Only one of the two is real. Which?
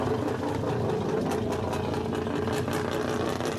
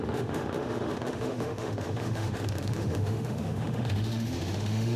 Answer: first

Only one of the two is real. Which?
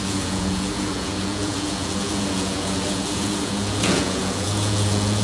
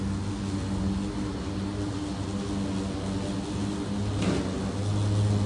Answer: second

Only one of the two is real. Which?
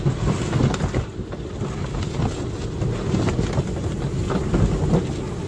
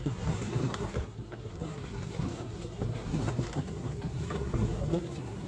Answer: first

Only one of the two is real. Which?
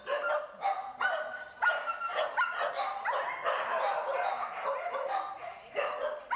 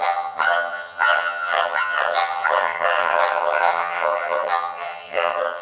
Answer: first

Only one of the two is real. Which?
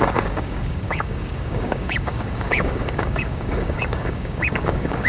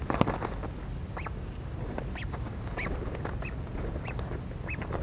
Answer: second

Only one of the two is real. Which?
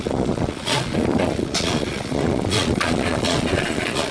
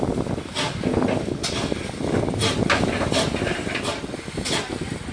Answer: second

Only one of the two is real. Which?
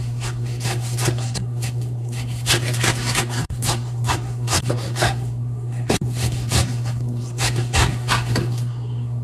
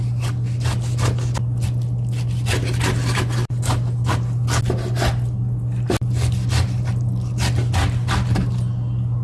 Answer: second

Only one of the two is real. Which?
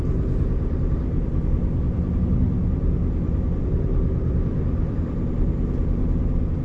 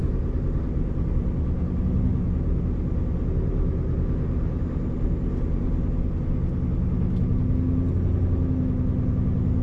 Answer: second